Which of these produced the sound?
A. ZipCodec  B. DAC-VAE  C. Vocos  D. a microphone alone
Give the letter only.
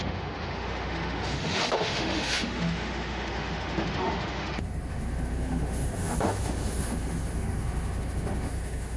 B